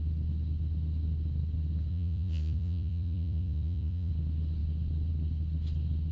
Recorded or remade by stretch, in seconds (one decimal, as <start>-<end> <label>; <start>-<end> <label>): 0.0-1.9 recorded; 1.9-4.1 remade; 4.1-6.1 recorded